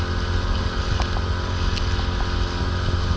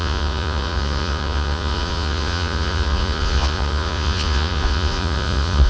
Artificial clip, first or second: second